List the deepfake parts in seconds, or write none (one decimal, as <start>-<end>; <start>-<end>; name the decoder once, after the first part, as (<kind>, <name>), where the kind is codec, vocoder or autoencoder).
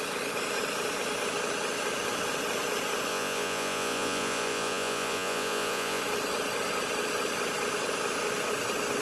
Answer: 3.1-6.0 (vocoder, Vocos)